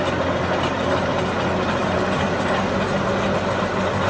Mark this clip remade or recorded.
recorded